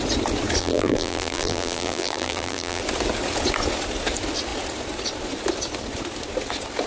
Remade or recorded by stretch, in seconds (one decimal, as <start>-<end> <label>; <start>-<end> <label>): 0.0-0.6 recorded; 0.6-2.8 remade; 2.8-6.9 recorded